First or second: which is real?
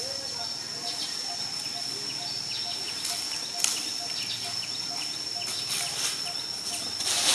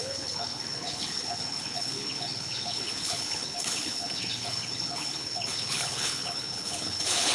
first